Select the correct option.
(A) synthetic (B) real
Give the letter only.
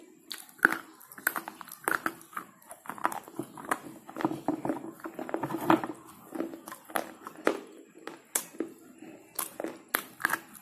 B